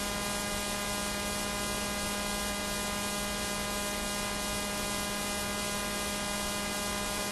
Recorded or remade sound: recorded